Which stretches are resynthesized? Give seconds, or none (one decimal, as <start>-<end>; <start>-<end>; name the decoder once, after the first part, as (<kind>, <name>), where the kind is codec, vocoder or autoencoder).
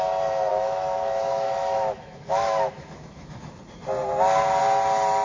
0.5-3.6 (autoencoder, DAC-VAE)